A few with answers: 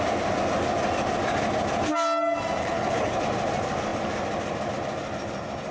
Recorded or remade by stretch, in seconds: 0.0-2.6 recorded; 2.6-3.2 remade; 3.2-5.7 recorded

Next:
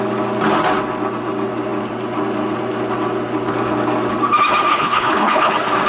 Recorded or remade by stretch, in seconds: 0.0-4.7 recorded; 4.7-5.5 remade; 5.5-5.9 recorded

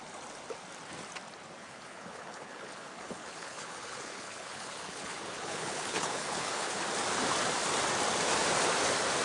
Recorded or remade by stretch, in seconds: 0.0-1.6 recorded; 1.6-6.8 remade; 6.8-9.2 recorded